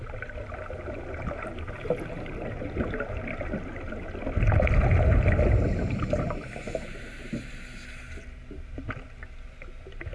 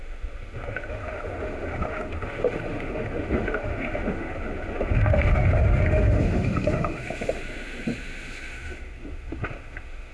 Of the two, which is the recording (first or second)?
first